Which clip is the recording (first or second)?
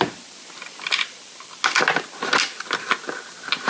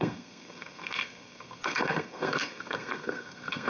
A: first